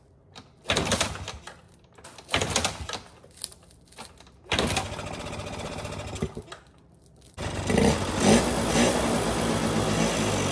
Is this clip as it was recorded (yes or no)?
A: yes